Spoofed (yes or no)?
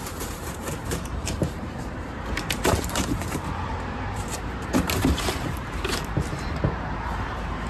yes